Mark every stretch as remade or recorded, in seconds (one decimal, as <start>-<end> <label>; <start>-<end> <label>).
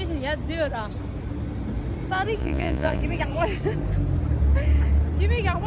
0.0-2.4 recorded; 2.4-3.0 remade; 3.0-5.7 recorded